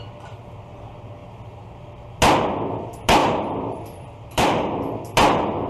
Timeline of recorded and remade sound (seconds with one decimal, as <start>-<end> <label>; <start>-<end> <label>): 0.0-3.2 recorded; 3.2-4.7 remade; 4.7-5.7 recorded